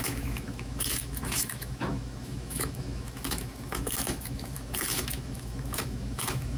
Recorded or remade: remade